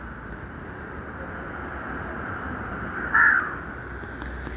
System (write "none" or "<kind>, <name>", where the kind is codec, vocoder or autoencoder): none